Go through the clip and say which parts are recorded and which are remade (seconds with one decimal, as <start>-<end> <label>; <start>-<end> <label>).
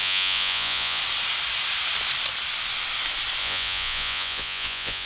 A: 0.0-1.0 remade; 1.0-3.4 recorded; 3.4-5.1 remade